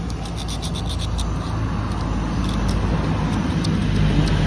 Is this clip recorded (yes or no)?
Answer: yes